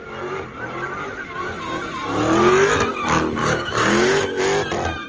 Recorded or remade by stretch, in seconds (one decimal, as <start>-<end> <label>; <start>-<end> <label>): 0.0-3.4 recorded; 3.4-4.4 remade; 4.4-5.1 recorded